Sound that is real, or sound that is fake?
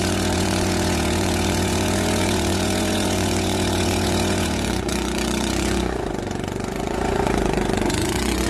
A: fake